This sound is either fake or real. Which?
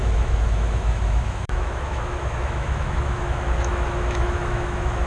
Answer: fake